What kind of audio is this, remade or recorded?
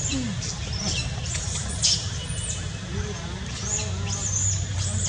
recorded